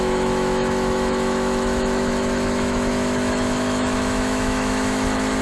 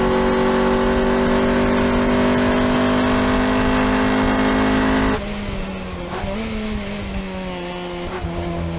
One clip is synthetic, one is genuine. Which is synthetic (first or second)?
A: first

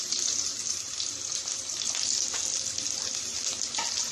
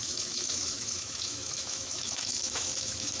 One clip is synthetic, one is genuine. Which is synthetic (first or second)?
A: second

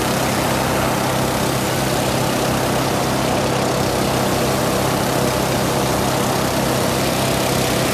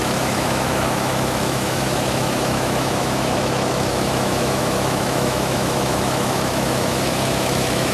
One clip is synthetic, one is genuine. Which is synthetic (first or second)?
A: second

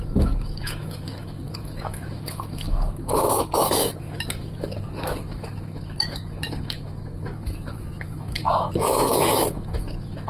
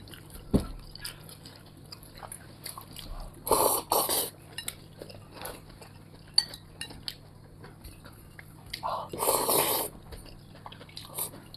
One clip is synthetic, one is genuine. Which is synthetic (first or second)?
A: first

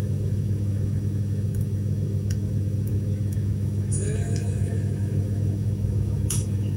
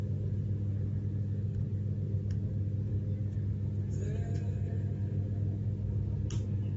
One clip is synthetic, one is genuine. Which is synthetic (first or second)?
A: first